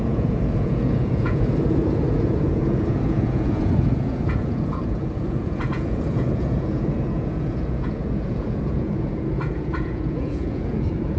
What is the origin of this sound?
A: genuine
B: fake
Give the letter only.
B